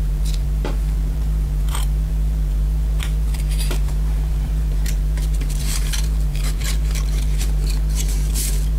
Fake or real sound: fake